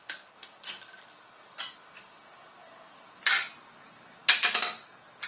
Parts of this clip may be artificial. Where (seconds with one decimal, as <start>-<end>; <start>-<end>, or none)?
none